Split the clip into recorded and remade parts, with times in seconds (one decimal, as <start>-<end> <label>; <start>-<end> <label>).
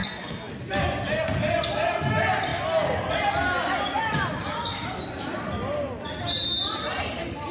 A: 0.0-0.5 remade; 0.5-7.5 recorded